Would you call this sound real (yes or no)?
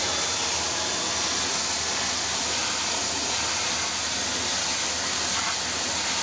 yes